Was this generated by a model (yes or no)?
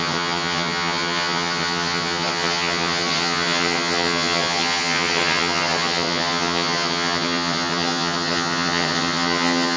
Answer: yes